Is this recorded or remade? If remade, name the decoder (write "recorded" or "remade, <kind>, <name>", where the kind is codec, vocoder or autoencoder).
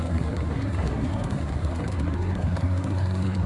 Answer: remade, codec, SNAC